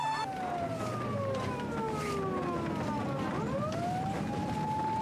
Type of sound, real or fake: real